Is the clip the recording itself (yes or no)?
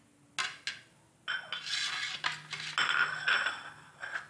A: yes